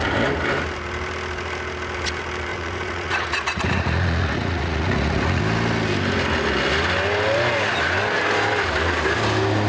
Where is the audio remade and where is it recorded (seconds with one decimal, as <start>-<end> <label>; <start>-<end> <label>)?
0.0-2.5 recorded; 2.5-5.4 remade; 5.4-9.7 recorded